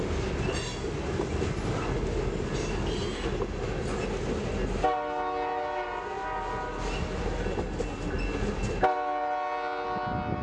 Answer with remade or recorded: recorded